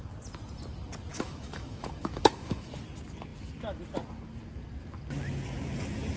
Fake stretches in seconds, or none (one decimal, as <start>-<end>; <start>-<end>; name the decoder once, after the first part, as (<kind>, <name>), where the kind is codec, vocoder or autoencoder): 1.1-2.7 (autoencoder, DAC-VAE)